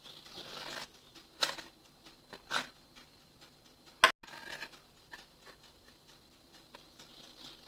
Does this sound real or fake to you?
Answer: real